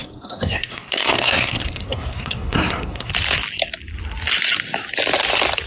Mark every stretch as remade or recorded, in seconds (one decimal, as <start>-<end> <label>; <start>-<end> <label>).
0.0-3.1 remade; 3.1-5.7 recorded

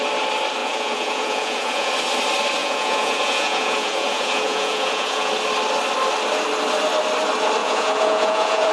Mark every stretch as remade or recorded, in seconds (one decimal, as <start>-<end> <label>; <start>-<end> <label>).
0.0-0.6 recorded; 0.6-1.9 remade; 1.9-2.6 recorded; 2.6-5.3 remade; 5.3-7.6 recorded; 7.6-8.7 remade

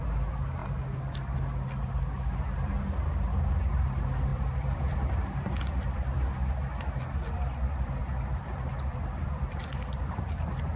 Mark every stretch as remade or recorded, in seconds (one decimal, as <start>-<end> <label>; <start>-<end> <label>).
0.0-4.3 recorded; 4.3-6.2 remade; 6.2-8.0 recorded; 8.0-10.8 remade

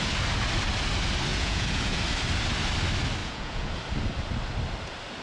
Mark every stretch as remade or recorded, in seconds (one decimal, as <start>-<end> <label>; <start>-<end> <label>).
0.0-1.3 recorded; 1.3-2.0 remade; 2.0-3.2 recorded; 3.2-3.7 remade; 3.7-5.2 recorded